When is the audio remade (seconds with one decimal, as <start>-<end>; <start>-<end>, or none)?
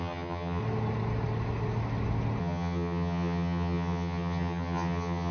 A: 0.0-0.6; 2.4-5.3